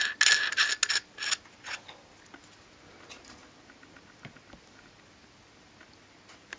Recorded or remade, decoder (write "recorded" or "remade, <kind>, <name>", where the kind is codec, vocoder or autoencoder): recorded